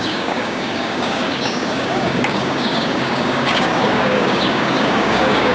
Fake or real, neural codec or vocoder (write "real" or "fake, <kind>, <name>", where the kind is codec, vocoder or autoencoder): fake, codec, DAC